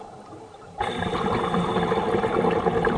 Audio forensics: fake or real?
real